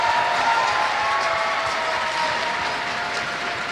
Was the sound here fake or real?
real